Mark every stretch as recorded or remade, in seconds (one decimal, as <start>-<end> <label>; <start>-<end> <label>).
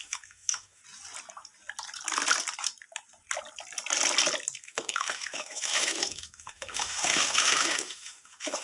0.0-0.8 remade; 0.8-4.6 recorded; 4.6-8.6 remade